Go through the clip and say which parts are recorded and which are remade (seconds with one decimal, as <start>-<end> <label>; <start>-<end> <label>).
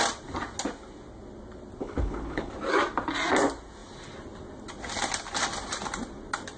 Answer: 0.0-1.8 recorded; 1.8-2.5 remade; 2.5-6.6 recorded